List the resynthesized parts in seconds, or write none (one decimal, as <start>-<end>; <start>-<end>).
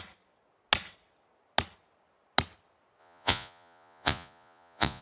3.0-5.0